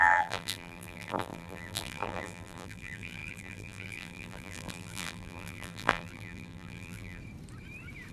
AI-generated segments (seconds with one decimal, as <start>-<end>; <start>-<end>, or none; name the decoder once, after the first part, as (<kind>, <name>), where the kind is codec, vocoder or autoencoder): 0.0-7.2 (vocoder, BigVGAN v2)